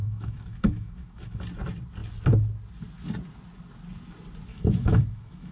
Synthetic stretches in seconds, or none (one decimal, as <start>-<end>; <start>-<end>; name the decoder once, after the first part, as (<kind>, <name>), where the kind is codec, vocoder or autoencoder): 0.0-1.4 (autoencoder, DAC-VAE); 4.5-5.5